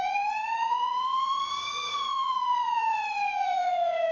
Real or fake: fake